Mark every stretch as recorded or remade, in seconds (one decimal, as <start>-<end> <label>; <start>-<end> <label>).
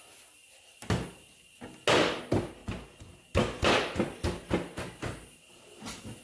0.0-6.2 recorded